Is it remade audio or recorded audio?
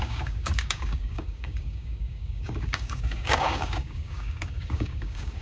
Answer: remade